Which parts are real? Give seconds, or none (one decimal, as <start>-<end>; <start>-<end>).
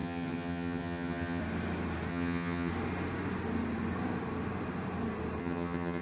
1.4-2.1; 2.7-5.4